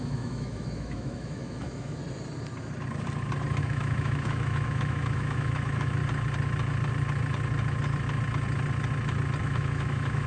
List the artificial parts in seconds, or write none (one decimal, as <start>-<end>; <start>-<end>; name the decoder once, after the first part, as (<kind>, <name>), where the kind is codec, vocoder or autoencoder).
0.0-2.0 (autoencoder, DAC-VAE); 3.6-6.0; 9.4-10.3